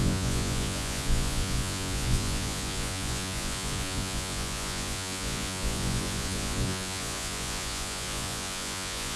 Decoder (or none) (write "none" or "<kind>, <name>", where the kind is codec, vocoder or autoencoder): vocoder, Vocos